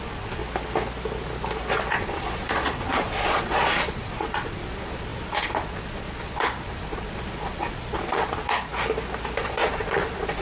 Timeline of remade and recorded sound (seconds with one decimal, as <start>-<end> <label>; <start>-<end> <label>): 0.0-0.4 remade; 0.4-1.9 recorded; 1.9-8.7 remade; 8.7-9.4 recorded; 9.4-10.4 remade